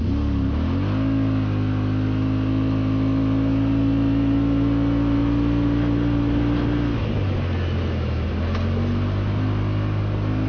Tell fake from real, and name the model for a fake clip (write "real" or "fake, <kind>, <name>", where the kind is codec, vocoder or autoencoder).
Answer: real